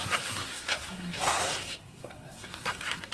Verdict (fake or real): fake